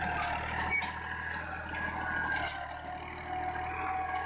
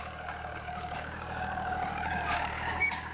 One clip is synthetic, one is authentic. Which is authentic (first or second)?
first